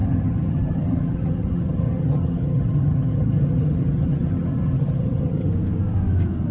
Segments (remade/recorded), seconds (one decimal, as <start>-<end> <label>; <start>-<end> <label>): 0.0-5.5 remade; 5.5-6.5 recorded